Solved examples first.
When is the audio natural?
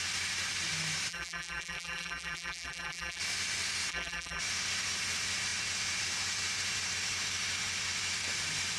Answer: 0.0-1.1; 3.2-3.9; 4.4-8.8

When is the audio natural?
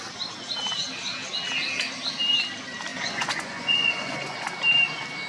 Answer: 0.0-2.9; 4.5-5.3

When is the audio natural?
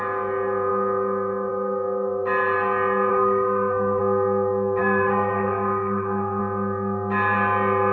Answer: 0.0-3.1; 4.0-4.8; 6.4-7.9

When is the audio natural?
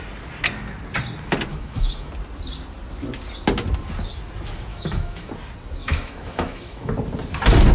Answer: 0.0-1.5; 2.1-4.7; 5.3-5.8; 6.9-7.7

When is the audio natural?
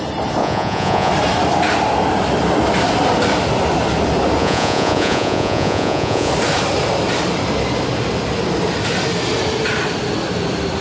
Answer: 0.0-0.4; 1.1-4.4; 6.3-10.8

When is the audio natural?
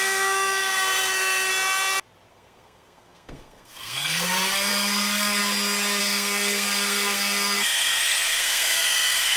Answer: 1.5-2.3; 5.4-6.0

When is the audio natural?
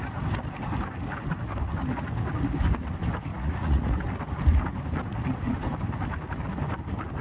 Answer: 0.0-3.3; 3.9-7.2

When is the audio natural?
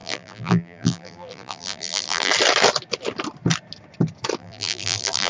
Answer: 2.3-4.4